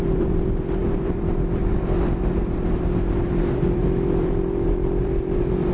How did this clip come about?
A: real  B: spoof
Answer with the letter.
B